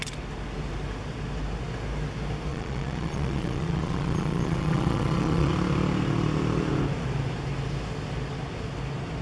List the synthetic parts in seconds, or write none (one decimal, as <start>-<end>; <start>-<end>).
2.5-5.5